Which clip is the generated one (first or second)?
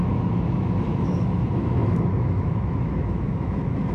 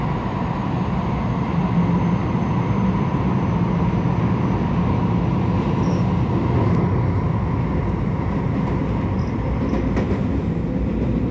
first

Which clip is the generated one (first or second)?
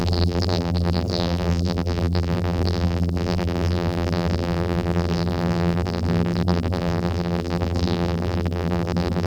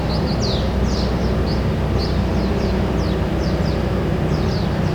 first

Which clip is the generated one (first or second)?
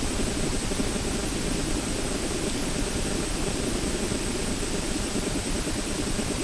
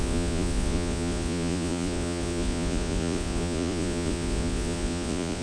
second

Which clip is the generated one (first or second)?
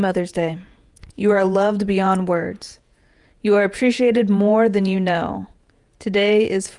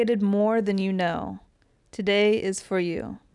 first